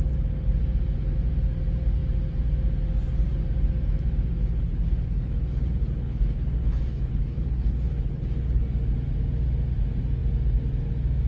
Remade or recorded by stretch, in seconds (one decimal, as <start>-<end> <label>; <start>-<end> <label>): 0.0-4.4 recorded; 4.4-8.6 remade; 8.6-11.3 recorded